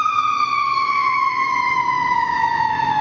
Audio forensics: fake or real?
fake